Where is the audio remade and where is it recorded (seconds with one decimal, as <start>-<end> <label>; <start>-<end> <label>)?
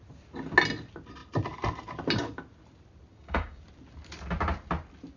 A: 0.0-3.1 recorded; 3.1-3.6 remade; 3.6-5.2 recorded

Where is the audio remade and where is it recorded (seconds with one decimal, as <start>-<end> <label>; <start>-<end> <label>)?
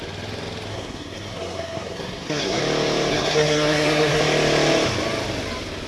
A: 0.0-0.7 recorded; 0.7-2.6 remade; 2.6-3.1 recorded; 3.1-4.2 remade; 4.2-5.9 recorded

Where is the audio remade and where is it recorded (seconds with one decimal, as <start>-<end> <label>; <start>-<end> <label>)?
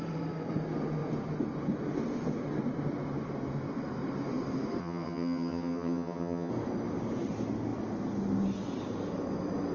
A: 0.0-4.8 recorded; 4.8-6.5 remade; 6.5-9.7 recorded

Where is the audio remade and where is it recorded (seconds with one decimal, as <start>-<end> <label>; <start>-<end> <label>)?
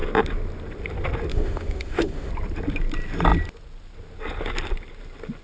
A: 0.0-1.3 recorded; 1.3-2.3 remade; 2.3-5.4 recorded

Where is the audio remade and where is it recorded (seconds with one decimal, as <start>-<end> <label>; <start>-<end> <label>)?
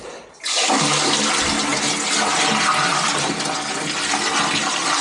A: 0.0-5.0 recorded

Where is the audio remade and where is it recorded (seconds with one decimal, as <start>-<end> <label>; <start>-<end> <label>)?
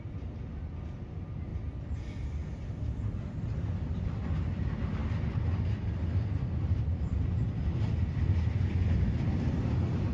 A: 0.0-1.5 recorded; 1.5-2.1 remade; 2.1-10.1 recorded